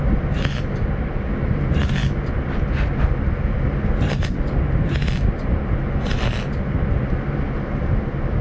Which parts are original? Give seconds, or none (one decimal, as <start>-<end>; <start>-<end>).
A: 0.0-8.4